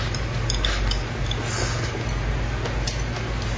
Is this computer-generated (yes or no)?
no